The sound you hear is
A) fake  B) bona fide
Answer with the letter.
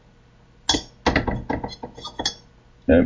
B